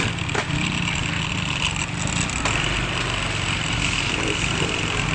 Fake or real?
real